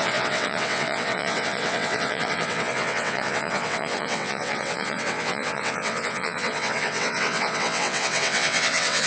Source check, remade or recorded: remade